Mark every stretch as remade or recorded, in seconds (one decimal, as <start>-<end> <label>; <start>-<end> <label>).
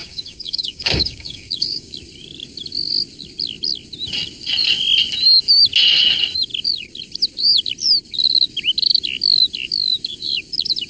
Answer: 0.0-1.9 remade; 1.9-10.9 recorded